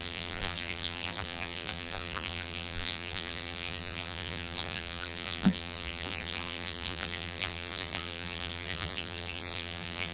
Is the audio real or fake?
fake